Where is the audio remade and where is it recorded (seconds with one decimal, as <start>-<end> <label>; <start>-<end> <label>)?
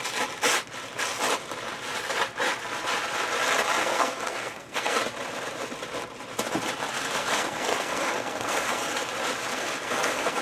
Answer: 0.0-3.8 recorded; 3.8-5.0 remade; 5.0-6.9 recorded; 6.9-9.0 remade; 9.0-9.5 recorded; 9.5-10.4 remade